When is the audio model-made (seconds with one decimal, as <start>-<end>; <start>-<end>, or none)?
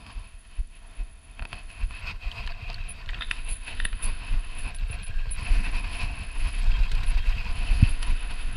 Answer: 0.0-2.0; 3.2-4.7; 5.4-6.6; 7.5-8.6